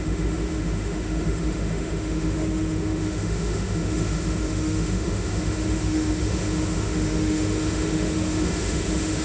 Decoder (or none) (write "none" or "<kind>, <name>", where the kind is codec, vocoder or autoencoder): autoencoder, DAC-VAE